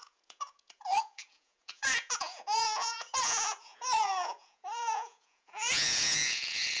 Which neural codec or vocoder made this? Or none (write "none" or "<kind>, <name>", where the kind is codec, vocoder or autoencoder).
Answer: vocoder, Vocos